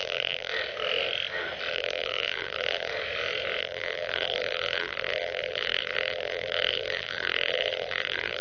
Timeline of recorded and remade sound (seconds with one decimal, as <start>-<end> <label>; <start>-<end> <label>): 0.0-0.5 remade; 0.5-1.7 recorded; 1.7-2.9 remade; 2.9-3.6 recorded; 3.6-8.4 remade